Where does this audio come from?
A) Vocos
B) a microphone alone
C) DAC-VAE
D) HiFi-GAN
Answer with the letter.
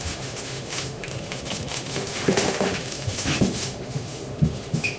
C